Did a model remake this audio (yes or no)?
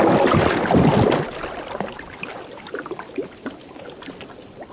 no